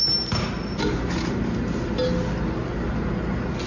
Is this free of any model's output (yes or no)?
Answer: yes